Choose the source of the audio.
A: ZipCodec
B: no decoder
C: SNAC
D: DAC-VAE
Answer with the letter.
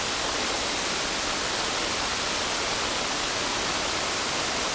B